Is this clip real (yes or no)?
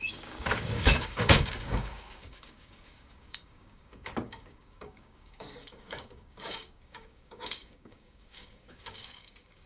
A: no